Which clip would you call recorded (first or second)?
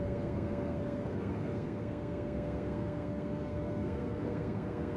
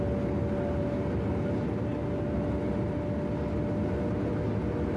second